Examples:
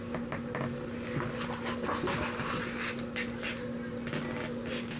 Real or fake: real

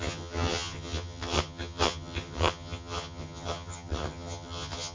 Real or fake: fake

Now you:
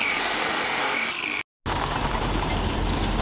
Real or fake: real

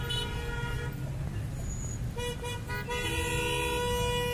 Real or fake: real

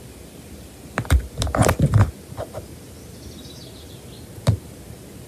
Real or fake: real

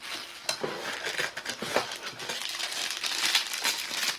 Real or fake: real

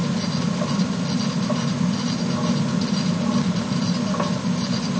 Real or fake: real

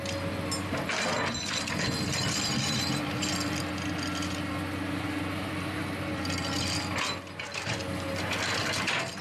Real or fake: real